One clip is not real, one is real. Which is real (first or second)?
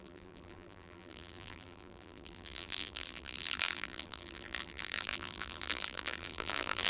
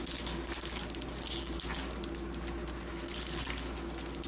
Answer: second